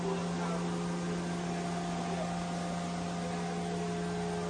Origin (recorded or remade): recorded